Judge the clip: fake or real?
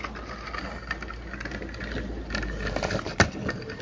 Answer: real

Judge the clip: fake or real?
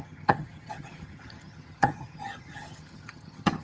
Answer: fake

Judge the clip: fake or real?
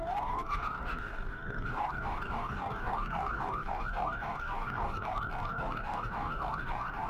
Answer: fake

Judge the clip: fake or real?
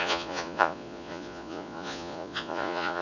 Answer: fake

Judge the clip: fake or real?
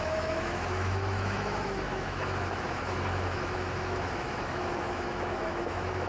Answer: fake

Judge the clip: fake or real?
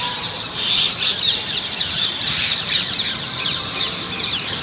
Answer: fake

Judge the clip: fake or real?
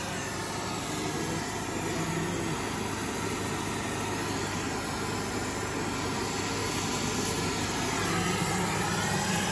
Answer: real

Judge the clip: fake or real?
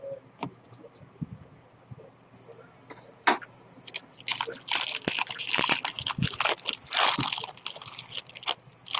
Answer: real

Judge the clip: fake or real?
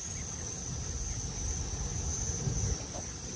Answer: real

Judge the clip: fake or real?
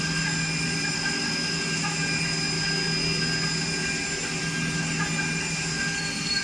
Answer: real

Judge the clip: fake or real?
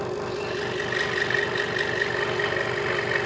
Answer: real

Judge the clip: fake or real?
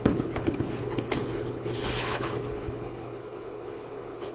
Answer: fake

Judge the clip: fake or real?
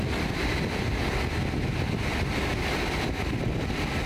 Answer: real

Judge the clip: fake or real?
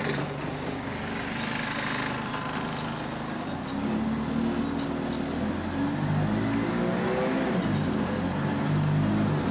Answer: real